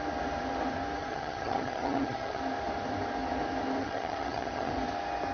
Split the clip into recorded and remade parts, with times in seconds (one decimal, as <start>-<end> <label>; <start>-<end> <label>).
0.0-1.0 recorded; 1.0-2.4 remade; 2.4-3.8 recorded; 3.8-4.7 remade; 4.7-5.3 recorded